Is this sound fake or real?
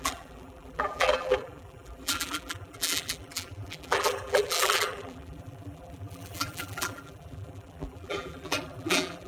fake